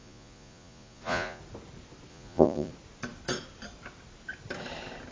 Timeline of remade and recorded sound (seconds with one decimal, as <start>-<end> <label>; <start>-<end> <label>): 0.0-1.4 remade; 1.4-2.1 recorded; 2.1-2.7 remade; 2.7-5.1 recorded